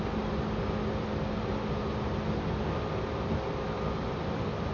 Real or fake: real